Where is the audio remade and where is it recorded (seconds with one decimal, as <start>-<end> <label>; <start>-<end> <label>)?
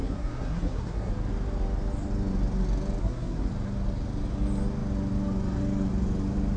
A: 0.0-1.1 remade; 1.1-3.0 recorded; 3.0-3.5 remade; 3.5-6.6 recorded